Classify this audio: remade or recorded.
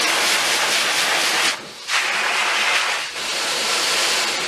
recorded